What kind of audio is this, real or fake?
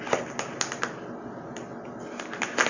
real